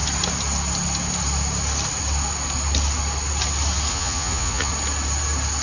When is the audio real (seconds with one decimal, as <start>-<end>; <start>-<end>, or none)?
0.0-3.9; 4.7-5.6